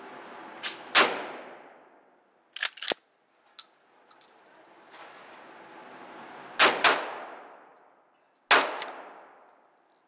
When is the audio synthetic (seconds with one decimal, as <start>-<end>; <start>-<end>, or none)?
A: none